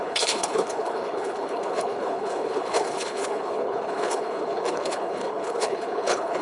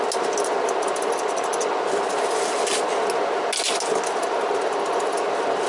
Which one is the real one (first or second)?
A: second